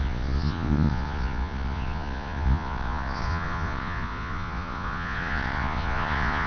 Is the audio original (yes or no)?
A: no